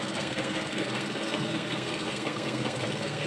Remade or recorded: remade